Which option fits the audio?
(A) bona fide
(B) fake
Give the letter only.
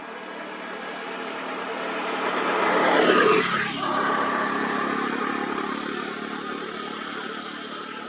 A